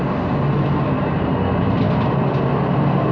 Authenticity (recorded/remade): recorded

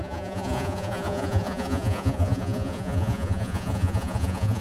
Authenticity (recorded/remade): remade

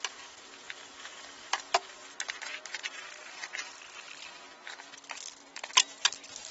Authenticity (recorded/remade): recorded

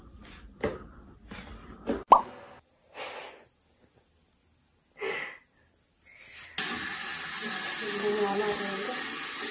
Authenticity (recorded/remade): recorded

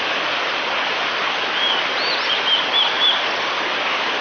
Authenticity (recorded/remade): recorded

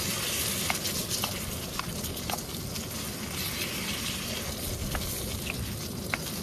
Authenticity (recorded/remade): recorded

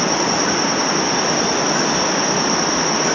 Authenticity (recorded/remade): recorded